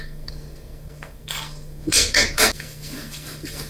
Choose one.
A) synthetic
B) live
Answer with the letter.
A